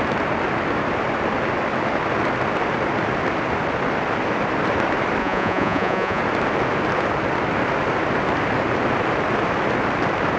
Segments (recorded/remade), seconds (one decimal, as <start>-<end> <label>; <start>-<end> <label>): 0.0-5.2 recorded; 5.2-6.2 remade; 6.2-10.4 recorded